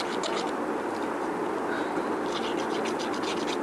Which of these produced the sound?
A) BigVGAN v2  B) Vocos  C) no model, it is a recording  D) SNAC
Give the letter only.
C